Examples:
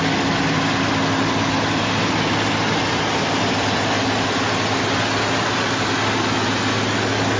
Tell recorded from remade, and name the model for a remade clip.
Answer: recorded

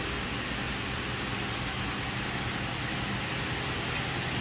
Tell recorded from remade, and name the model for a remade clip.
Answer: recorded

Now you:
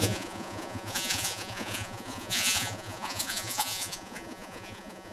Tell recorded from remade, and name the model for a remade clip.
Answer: remade, vocoder, Vocos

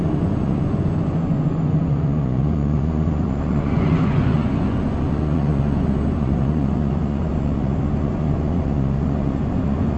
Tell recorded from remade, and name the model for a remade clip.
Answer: remade, vocoder, Vocos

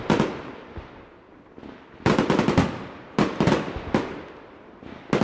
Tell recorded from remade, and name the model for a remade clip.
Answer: recorded